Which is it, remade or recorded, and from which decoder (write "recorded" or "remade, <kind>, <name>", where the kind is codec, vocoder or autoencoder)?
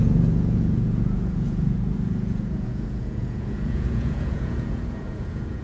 remade, vocoder, Vocos